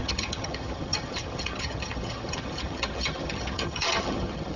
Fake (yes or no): yes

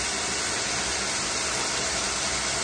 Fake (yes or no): no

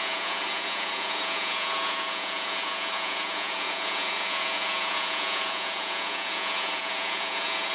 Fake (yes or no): yes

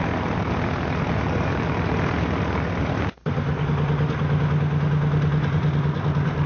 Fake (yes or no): no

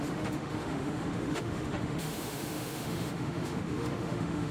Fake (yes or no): yes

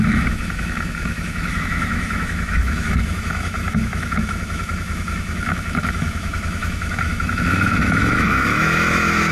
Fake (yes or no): yes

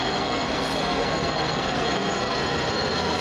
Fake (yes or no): yes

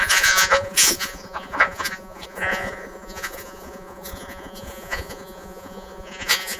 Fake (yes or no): yes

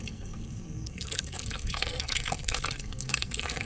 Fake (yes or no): yes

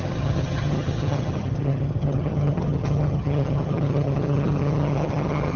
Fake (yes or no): yes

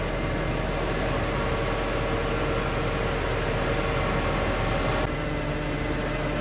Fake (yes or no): no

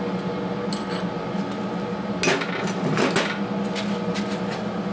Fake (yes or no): no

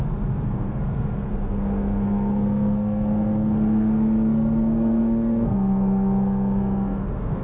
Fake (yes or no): yes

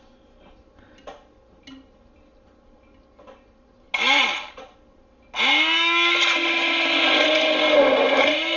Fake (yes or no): no